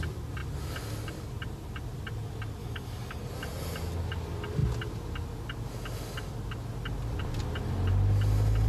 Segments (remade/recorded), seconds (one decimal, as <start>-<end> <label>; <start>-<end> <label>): 0.0-2.6 recorded; 2.6-3.2 remade; 3.2-8.7 recorded